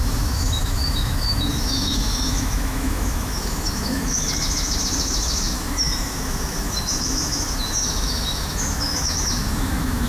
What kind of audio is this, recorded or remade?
remade